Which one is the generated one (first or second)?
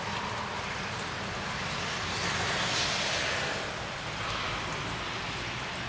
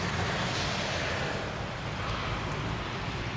second